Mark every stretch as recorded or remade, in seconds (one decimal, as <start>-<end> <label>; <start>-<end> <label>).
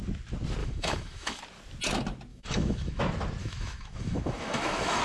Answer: 0.0-0.6 recorded; 0.6-1.4 remade; 1.4-2.3 recorded; 2.3-3.0 remade; 3.0-3.4 recorded; 3.4-5.0 remade